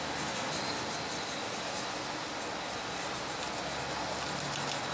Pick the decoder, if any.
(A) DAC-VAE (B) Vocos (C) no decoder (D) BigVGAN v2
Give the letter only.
C